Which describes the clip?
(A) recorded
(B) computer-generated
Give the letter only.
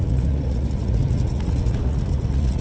B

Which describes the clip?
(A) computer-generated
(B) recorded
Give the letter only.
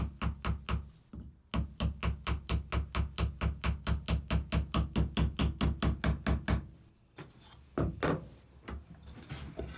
B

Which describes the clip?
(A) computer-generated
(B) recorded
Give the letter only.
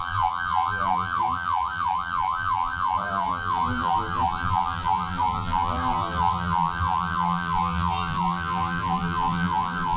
A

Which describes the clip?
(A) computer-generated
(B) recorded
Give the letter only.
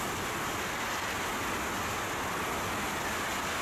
B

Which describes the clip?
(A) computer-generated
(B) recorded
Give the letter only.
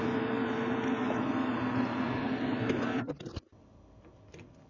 B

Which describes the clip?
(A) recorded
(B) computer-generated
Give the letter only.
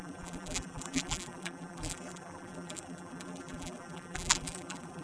B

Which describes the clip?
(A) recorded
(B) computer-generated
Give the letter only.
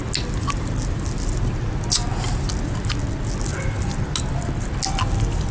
A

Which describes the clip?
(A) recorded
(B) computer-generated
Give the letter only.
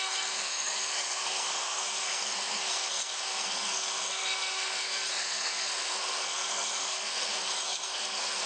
B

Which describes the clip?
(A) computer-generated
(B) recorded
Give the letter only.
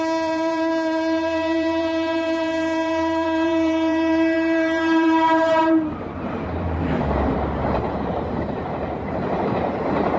A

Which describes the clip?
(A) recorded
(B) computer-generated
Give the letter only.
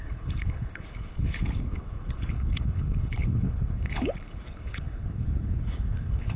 B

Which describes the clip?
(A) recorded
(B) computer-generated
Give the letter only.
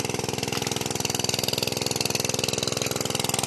A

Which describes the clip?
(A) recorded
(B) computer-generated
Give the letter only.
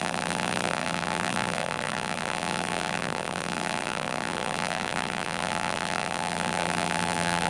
B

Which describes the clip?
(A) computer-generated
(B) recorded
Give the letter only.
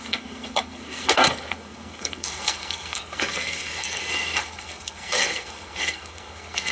A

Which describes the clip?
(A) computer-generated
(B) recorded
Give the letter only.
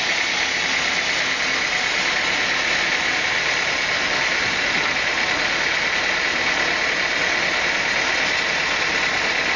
B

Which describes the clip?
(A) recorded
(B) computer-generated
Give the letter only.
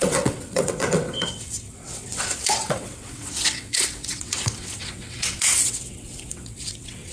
B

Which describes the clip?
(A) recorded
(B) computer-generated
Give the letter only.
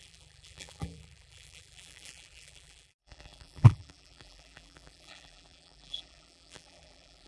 B